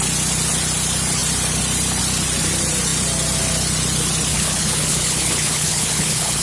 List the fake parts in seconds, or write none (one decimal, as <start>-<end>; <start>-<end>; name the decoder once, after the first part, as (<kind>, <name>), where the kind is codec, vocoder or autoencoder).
4.3-6.4 (codec, HILCodec)

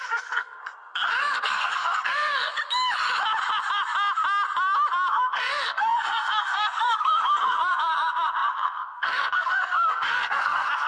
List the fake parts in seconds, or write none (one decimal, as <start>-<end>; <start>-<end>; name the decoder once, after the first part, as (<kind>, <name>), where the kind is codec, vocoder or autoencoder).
0.0-0.6 (codec, SNAC); 1.2-2.5; 5.1-10.9